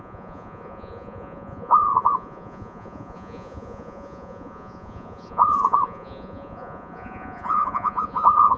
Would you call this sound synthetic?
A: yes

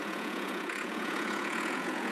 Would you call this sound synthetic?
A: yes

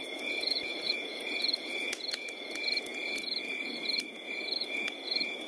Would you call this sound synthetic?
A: yes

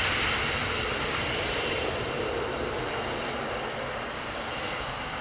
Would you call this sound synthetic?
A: no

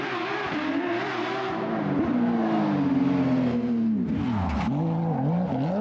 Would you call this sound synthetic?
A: no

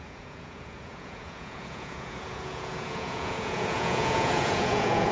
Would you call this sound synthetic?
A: yes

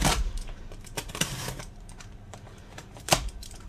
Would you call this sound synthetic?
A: yes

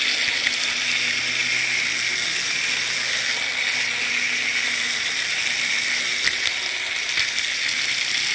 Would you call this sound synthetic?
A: no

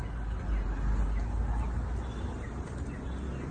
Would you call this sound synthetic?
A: no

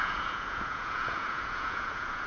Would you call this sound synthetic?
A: yes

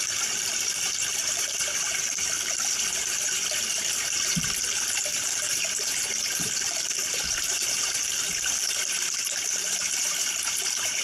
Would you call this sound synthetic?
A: yes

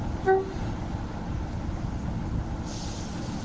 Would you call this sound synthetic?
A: no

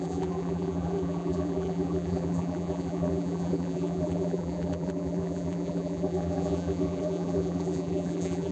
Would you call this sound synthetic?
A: yes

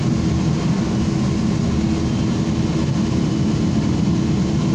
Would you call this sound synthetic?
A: no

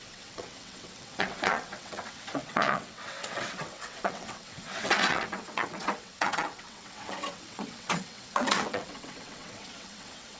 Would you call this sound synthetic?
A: yes